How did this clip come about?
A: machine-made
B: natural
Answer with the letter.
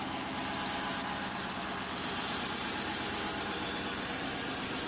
B